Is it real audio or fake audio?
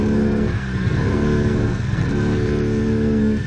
fake